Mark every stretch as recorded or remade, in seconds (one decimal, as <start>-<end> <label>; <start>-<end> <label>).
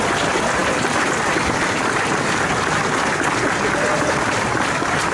0.0-5.1 recorded